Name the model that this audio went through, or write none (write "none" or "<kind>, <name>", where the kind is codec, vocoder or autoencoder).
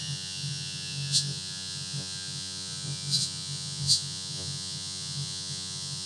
vocoder, Vocos